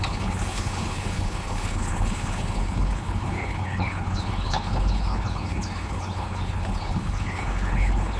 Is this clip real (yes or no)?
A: no